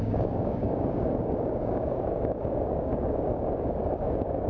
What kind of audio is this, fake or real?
fake